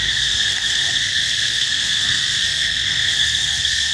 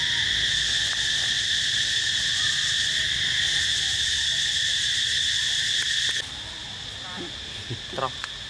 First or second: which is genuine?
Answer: second